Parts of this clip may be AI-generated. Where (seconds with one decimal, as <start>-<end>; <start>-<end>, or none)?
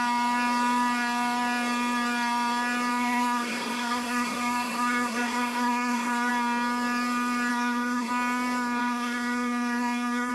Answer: 2.9-6.3; 7.5-8.1; 8.8-10.3